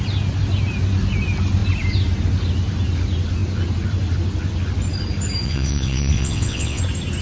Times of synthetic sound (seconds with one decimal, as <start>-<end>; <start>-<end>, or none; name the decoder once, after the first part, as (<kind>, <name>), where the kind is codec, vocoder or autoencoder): 5.4-6.8 (vocoder, WaveNeXt)